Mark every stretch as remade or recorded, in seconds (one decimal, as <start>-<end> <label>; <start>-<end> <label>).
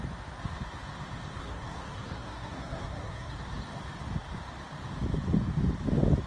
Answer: 0.0-1.4 recorded; 1.4-3.4 remade; 3.4-6.3 recorded